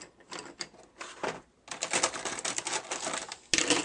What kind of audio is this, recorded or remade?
recorded